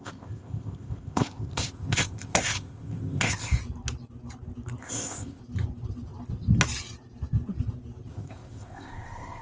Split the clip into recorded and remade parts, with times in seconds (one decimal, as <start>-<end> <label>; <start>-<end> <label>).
0.0-3.6 remade; 3.6-4.8 recorded; 4.8-5.4 remade; 5.4-8.1 recorded; 8.1-9.4 remade